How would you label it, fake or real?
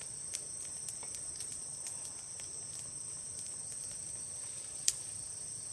real